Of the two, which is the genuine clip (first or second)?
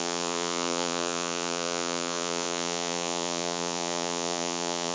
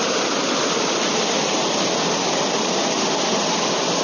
second